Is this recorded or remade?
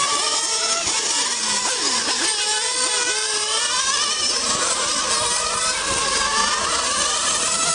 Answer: remade